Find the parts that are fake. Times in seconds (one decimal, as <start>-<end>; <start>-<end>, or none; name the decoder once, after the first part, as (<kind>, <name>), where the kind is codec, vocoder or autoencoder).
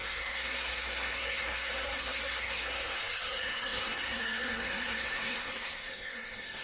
0.0-6.6 (codec, SNAC)